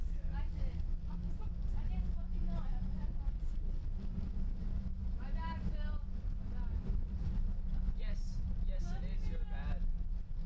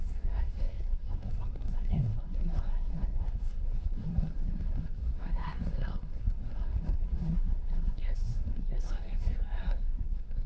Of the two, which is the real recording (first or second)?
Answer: first